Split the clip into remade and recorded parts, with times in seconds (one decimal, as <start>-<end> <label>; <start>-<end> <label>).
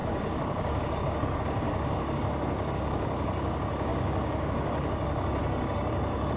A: 0.0-6.4 remade